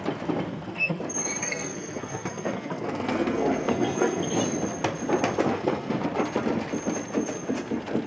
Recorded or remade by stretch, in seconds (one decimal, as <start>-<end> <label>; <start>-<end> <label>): 0.0-0.5 recorded; 0.5-1.0 remade; 1.0-1.4 recorded; 1.4-4.2 remade; 4.2-5.5 recorded; 5.5-6.0 remade; 6.0-8.1 recorded